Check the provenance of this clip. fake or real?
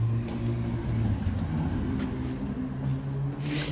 real